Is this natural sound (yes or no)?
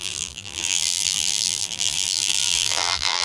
no